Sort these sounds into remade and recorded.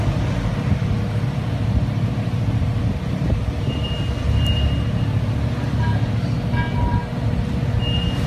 recorded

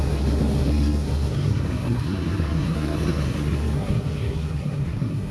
remade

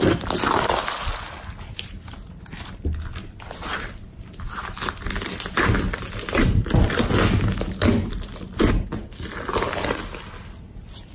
recorded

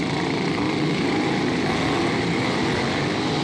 recorded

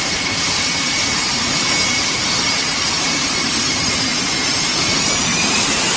remade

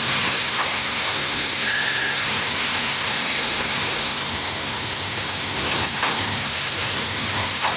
remade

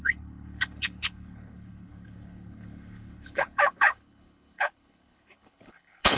remade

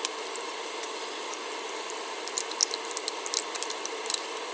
recorded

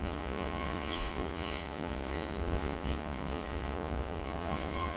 remade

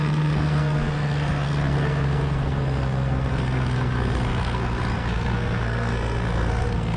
remade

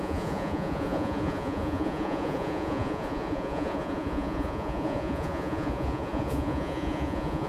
remade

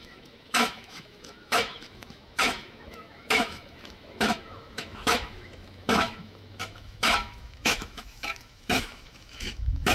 remade